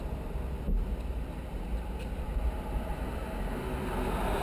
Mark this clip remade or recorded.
recorded